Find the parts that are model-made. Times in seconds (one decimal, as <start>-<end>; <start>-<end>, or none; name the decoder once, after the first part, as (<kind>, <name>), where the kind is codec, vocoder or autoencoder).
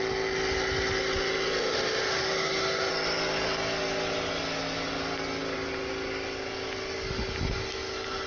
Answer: 1.6-2.9 (autoencoder, DAC-VAE)